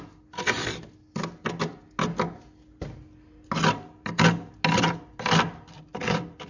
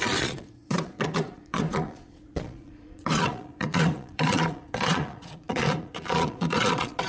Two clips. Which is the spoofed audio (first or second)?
second